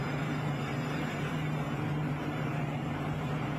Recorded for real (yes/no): no